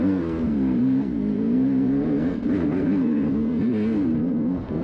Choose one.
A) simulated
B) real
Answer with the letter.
A